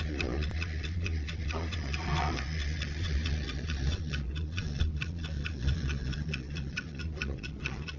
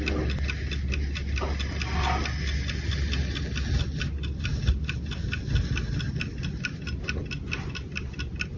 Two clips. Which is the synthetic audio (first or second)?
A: first